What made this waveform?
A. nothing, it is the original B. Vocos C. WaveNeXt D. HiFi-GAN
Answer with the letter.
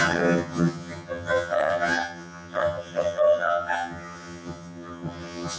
D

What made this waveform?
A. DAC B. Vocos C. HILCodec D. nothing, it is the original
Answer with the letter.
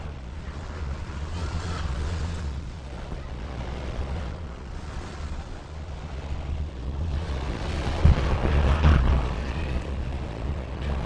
B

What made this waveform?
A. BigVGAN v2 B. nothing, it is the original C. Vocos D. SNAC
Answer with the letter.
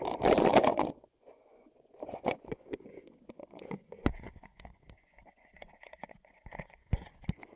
C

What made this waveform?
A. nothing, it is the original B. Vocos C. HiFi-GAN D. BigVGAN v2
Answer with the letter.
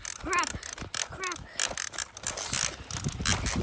A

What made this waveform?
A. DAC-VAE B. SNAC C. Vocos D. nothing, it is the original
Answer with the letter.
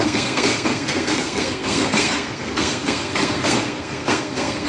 B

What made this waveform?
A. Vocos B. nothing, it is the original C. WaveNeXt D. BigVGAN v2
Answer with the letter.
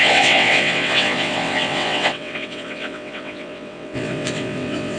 C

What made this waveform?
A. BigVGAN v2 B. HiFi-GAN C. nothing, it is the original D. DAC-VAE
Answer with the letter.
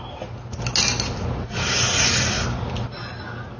C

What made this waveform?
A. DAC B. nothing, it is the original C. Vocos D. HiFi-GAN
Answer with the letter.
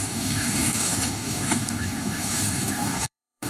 A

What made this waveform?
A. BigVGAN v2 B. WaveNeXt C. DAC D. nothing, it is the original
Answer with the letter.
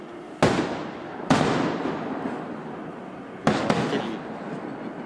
D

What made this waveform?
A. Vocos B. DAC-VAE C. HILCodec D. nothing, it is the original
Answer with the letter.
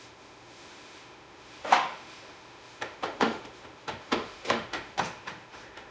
B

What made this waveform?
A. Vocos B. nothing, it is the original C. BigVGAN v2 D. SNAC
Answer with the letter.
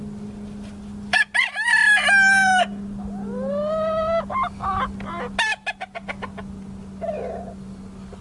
B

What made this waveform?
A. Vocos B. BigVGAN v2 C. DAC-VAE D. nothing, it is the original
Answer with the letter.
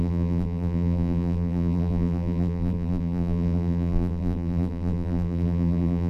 B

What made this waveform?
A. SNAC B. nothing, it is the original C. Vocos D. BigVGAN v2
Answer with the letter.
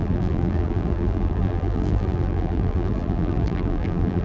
D